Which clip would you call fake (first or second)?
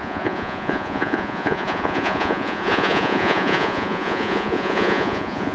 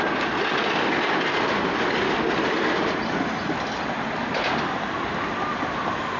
first